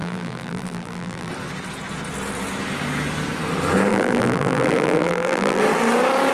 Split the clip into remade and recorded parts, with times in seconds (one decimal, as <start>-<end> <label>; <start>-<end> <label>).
0.0-1.3 remade; 1.3-3.9 recorded; 3.9-5.6 remade; 5.6-6.3 recorded

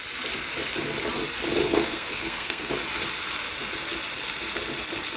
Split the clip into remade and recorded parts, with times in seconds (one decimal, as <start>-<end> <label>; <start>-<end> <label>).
0.0-1.6 recorded; 1.6-2.7 remade; 2.7-5.2 recorded